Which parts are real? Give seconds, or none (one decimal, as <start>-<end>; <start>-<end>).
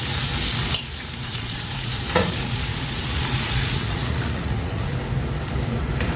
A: 0.0-1.2; 4.9-6.2